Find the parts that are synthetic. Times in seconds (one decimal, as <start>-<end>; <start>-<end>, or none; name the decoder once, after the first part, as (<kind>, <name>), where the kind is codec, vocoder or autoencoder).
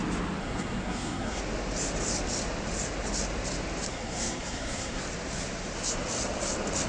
0.4-1.4 (codec, SNAC); 3.9-5.0